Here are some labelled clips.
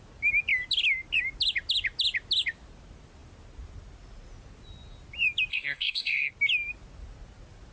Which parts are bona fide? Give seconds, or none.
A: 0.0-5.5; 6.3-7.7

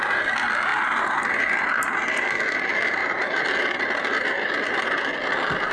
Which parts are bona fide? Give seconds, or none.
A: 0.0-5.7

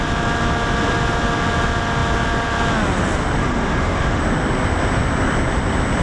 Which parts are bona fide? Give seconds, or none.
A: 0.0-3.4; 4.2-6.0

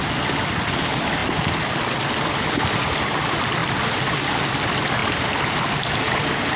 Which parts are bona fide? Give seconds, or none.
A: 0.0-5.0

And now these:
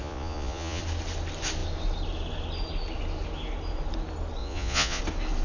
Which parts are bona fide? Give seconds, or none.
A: 0.8-4.4; 5.0-5.4